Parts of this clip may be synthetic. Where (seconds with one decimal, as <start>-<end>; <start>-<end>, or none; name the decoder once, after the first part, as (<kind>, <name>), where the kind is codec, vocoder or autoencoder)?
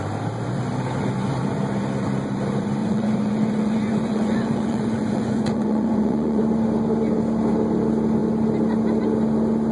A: 2.8-6.4 (vocoder, Vocos)